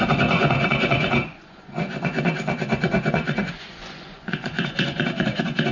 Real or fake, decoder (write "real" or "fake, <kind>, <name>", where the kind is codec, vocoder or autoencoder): fake, vocoder, Vocos